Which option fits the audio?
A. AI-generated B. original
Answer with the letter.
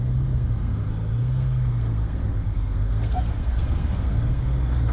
A